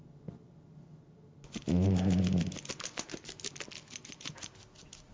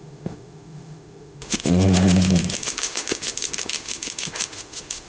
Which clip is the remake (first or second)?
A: second